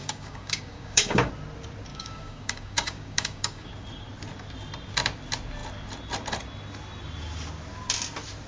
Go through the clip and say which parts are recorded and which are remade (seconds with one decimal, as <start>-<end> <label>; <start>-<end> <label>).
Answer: 0.0-1.3 remade; 1.3-1.9 recorded; 1.9-3.7 remade; 3.7-8.5 recorded